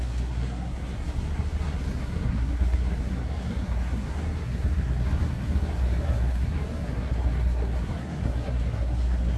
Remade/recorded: remade